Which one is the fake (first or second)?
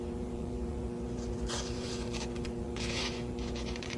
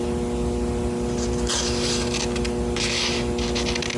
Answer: first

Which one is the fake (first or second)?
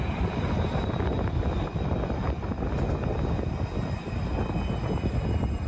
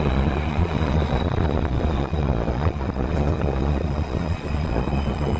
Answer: second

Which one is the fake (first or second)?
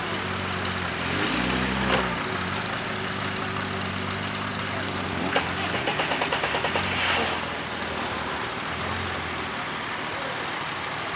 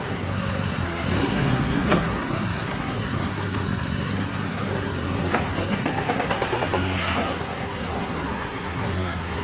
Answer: second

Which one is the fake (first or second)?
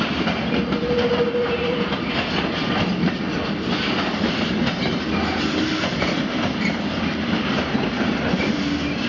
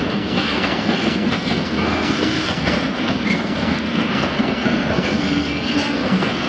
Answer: second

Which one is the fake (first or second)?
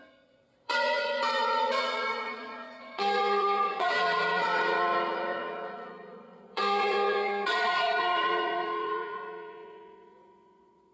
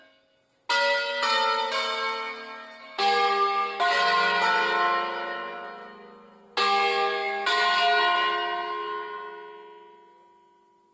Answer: first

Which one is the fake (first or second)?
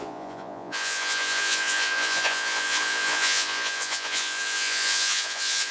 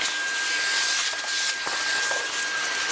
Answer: first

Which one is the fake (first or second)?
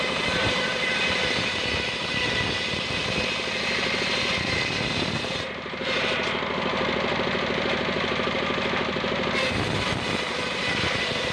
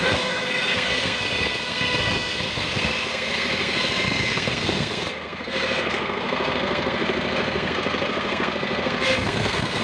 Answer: second